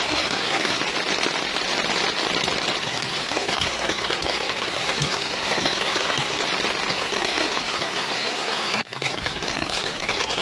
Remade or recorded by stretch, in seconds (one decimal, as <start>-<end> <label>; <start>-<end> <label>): 0.0-0.8 remade; 0.8-2.8 recorded; 2.8-6.4 remade; 6.4-6.9 recorded; 6.9-10.4 remade